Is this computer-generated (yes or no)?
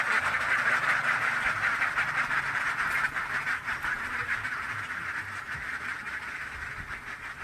no